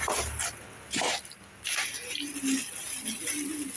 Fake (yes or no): no